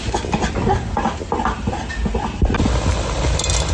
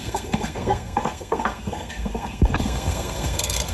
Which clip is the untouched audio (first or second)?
first